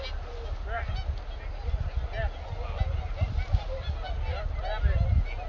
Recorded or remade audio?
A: recorded